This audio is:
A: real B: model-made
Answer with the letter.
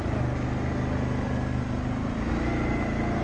A